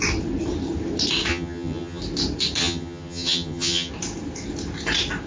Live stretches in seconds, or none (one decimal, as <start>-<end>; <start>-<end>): 0.0-1.3; 2.0-2.6; 3.9-5.3